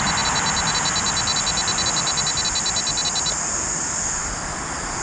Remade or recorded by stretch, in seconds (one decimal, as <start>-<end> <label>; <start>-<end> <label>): 0.0-5.0 recorded